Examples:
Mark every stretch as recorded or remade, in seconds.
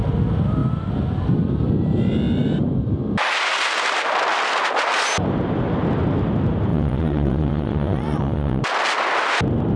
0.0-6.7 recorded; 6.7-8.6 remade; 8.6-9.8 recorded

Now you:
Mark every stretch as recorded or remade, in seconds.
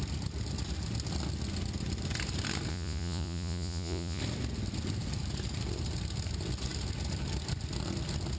0.0-2.7 recorded; 2.7-4.2 remade; 4.2-8.4 recorded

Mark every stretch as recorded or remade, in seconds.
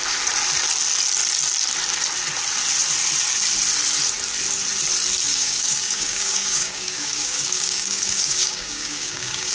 0.0-5.3 recorded; 5.3-9.5 remade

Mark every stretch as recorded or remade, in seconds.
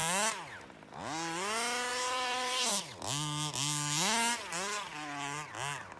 0.0-1.9 recorded; 1.9-2.7 remade; 2.7-6.0 recorded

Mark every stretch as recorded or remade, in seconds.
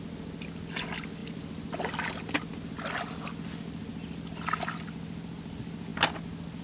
0.0-3.9 recorded; 3.9-4.6 remade; 4.6-6.6 recorded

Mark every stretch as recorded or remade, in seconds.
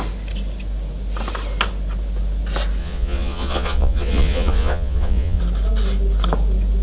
0.0-2.8 recorded; 2.8-5.4 remade; 5.4-6.8 recorded